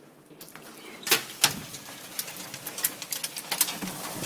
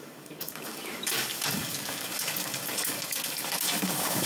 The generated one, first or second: second